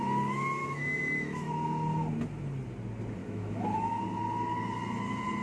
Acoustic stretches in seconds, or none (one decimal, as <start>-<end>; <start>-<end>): 0.0-0.6; 1.5-3.2; 4.0-5.4